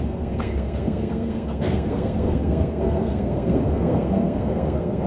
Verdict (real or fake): fake